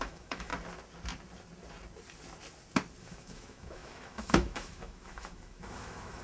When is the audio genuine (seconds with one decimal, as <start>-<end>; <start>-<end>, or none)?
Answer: 0.5-3.0